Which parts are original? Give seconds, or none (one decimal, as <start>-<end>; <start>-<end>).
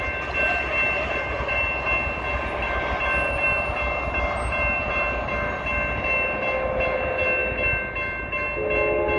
0.0-9.2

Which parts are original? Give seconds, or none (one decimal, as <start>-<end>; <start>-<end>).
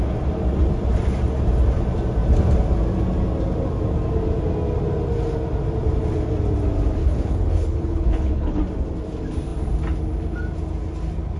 0.0-7.0; 8.6-11.4